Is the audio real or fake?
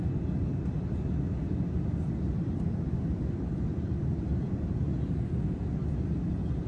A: real